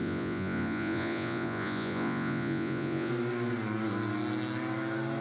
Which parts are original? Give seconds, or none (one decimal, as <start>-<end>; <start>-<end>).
3.1-5.2